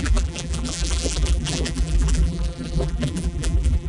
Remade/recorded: remade